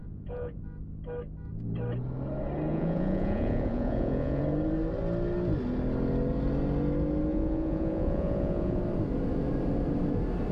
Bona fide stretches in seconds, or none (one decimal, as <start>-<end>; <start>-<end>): 0.6-2.7; 4.4-7.3; 8.8-10.5